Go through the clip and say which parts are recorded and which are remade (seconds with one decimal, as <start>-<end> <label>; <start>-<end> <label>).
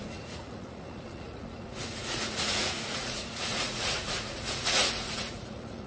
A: 0.0-5.9 remade